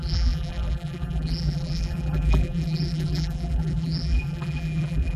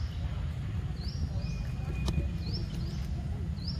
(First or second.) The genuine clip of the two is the second